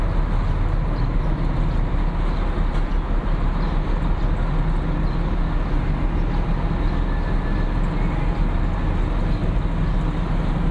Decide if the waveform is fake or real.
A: real